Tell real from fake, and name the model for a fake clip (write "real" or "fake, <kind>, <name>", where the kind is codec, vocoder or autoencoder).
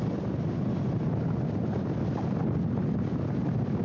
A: real